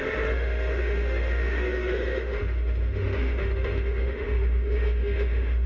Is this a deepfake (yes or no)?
yes